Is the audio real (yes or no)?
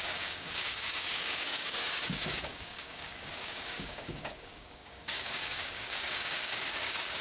no